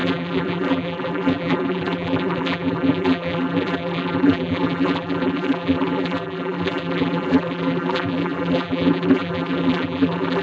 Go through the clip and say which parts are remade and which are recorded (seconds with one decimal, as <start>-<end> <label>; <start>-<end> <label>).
0.0-10.4 remade